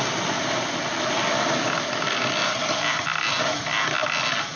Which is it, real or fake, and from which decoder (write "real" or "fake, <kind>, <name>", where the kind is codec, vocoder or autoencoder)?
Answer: real